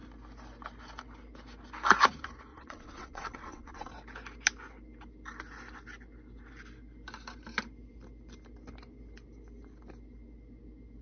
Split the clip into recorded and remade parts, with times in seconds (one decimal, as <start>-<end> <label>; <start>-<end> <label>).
0.0-2.5 recorded; 2.5-3.9 remade; 3.9-11.0 recorded